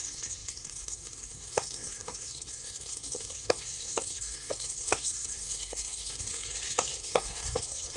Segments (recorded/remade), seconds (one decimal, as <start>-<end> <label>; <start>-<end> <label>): 0.0-8.0 remade